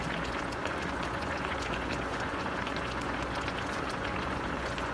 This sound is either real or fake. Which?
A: fake